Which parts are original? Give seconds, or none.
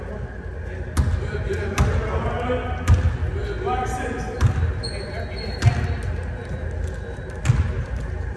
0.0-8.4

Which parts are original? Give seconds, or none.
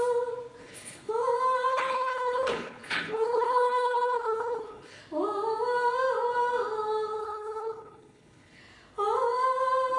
0.0-0.6; 1.1-1.7; 5.0-7.2; 8.6-10.0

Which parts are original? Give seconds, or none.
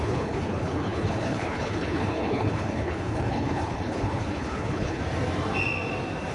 5.0-6.3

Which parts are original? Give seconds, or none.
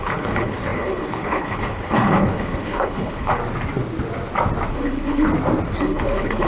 3.4-4.7; 5.3-5.8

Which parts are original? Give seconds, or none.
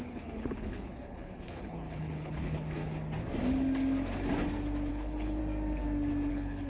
2.8-4.9; 5.4-6.3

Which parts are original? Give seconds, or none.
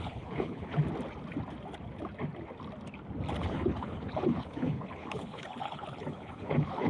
0.8-3.4